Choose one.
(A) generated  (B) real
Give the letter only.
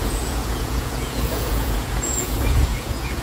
A